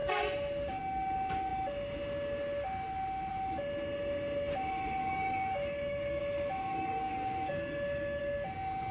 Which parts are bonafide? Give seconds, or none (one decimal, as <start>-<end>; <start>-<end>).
0.0-5.0; 6.2-6.7; 8.2-8.9